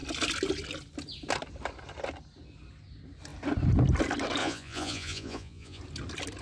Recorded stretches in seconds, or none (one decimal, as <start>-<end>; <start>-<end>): 0.0-4.4; 5.8-6.4